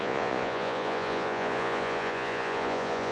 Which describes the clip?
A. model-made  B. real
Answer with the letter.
A